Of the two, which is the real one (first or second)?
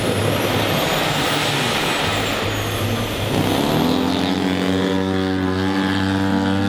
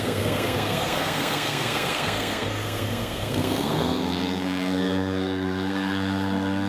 first